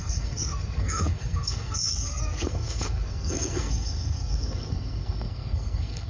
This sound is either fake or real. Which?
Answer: fake